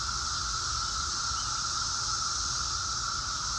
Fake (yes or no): no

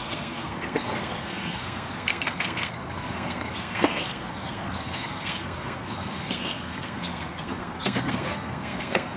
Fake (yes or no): yes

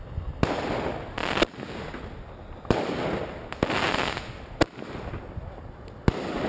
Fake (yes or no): no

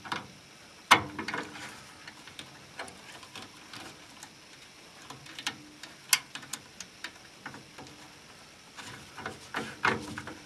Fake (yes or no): no